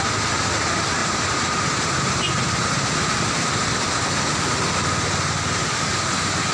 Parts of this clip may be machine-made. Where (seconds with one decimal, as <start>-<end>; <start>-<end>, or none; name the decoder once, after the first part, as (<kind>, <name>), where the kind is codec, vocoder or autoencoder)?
1.0-3.7 (vocoder, BigVGAN v2)